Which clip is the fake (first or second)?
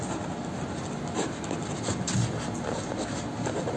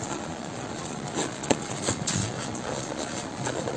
second